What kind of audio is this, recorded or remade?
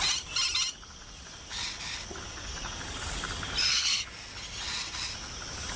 recorded